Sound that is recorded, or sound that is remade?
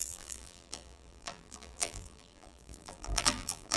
remade